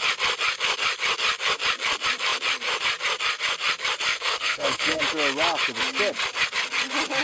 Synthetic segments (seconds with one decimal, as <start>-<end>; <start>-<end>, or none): 4.1-5.0